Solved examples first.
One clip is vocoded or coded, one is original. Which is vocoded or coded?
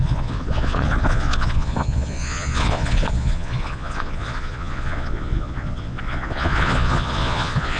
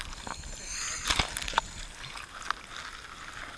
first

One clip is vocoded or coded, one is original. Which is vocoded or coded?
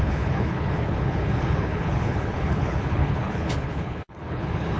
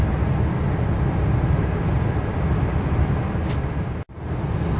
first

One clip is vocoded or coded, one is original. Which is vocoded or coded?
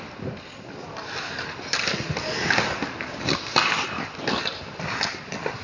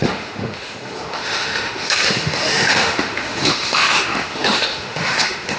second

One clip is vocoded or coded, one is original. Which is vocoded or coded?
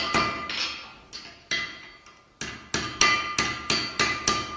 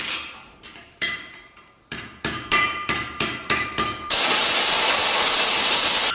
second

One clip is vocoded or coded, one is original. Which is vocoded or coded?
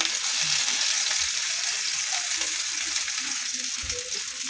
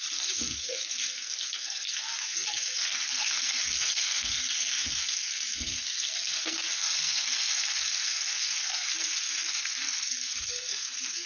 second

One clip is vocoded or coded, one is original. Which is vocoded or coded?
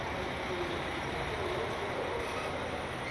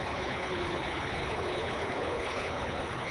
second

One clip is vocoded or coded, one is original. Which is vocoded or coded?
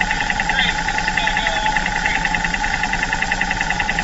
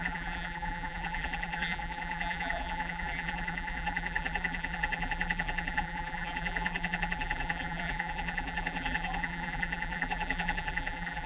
second